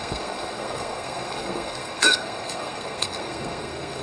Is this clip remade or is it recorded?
remade